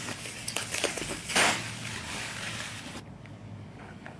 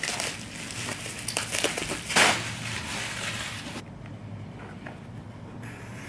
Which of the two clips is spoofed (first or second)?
first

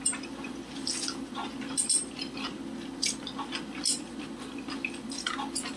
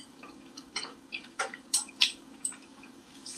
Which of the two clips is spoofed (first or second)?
second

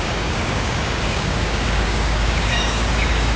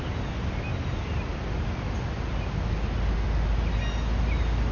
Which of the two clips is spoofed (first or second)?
first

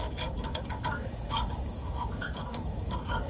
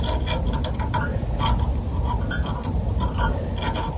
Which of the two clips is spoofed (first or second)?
first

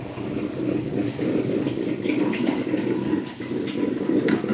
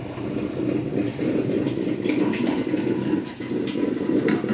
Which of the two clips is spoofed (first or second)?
first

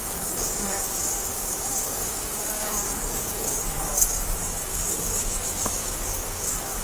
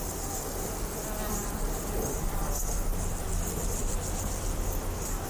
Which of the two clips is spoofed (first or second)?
first